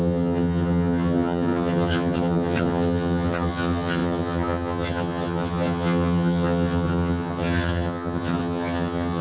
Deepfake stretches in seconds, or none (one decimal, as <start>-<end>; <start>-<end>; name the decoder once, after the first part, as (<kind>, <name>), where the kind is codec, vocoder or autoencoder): 0.0-9.2 (vocoder, HiFi-GAN)